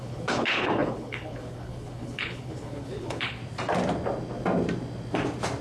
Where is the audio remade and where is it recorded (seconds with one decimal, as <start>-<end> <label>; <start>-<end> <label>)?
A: 0.0-3.4 remade; 3.4-5.6 recorded